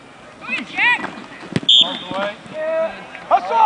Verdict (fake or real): real